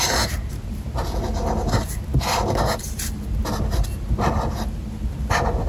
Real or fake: real